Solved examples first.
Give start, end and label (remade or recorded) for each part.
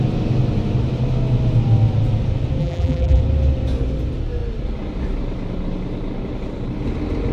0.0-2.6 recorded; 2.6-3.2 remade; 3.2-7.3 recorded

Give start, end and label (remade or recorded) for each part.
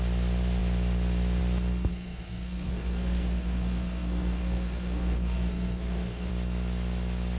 0.0-1.9 recorded; 1.9-6.3 remade; 6.3-7.4 recorded